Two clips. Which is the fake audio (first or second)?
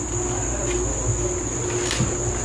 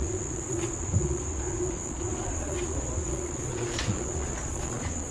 second